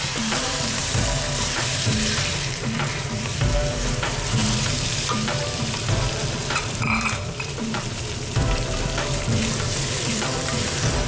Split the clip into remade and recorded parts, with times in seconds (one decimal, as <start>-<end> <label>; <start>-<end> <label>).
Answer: 0.0-11.1 remade